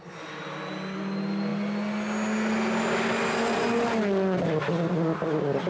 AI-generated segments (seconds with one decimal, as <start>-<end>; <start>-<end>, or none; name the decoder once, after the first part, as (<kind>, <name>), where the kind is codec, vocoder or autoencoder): none